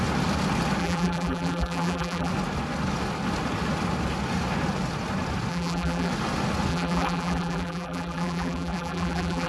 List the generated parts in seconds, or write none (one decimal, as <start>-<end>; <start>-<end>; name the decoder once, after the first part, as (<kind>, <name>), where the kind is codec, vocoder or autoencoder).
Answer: 0.8-2.3 (vocoder, BigVGAN v2); 5.5-6.1; 6.7-9.5